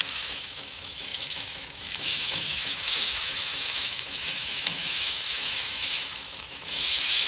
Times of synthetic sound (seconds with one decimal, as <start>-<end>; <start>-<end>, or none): 0.0-7.3